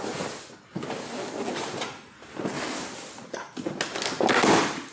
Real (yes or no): yes